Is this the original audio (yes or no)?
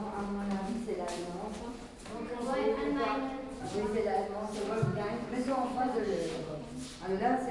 yes